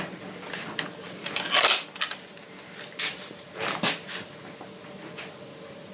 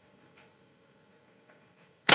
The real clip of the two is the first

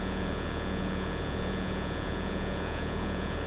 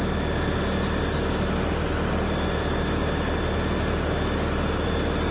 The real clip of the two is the second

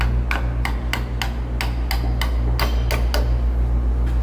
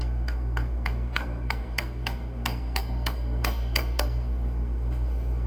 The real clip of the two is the first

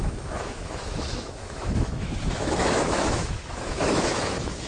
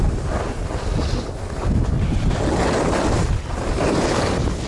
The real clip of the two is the second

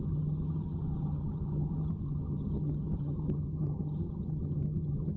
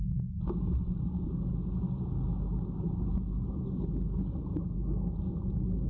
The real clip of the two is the second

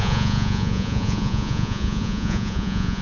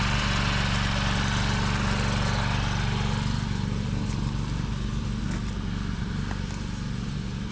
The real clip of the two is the second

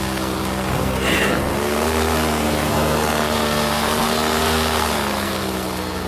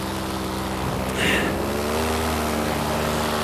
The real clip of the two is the second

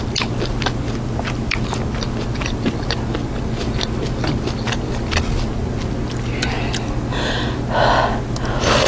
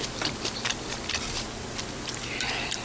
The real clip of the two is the first